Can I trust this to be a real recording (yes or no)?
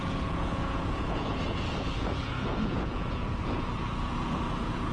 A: no